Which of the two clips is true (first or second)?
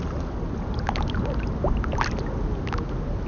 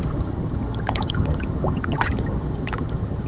first